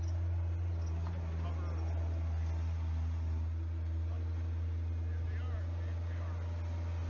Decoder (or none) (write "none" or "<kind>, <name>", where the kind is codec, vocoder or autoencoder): none